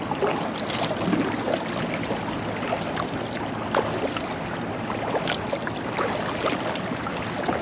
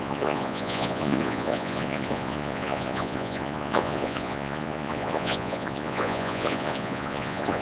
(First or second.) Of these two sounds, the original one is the first